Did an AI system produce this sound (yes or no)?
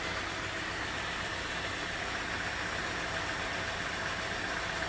no